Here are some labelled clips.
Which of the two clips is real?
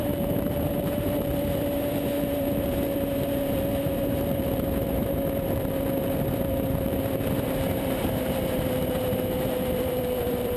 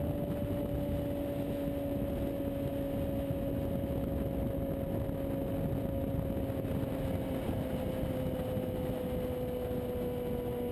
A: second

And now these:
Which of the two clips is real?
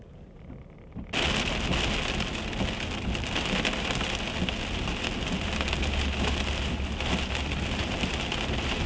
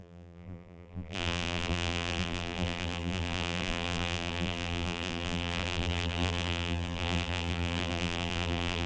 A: first